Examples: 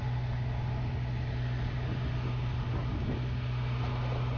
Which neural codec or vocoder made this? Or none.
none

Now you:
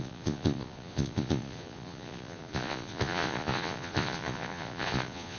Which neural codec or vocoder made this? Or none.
vocoder, Vocos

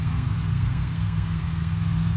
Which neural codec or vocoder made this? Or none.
codec, SNAC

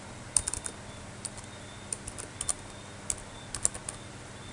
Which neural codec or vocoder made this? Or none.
none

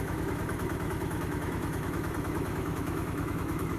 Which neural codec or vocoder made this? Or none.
autoencoder, DAC-VAE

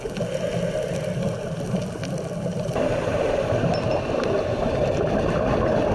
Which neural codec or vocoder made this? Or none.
none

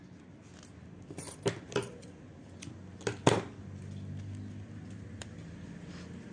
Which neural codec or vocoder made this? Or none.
none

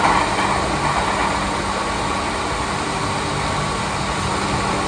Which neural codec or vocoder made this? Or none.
none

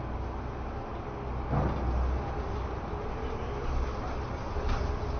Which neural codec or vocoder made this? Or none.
none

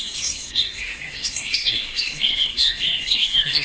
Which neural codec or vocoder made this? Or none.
codec, SNAC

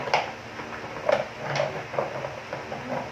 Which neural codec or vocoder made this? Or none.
none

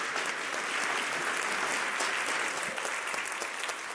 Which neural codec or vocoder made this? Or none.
none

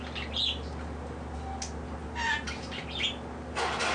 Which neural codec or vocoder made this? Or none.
none